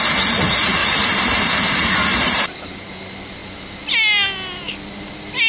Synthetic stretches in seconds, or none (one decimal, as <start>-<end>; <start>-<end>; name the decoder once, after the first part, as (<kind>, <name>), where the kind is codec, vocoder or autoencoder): 0.8-1.5 (vocoder, BigVGAN v2); 2.1-2.8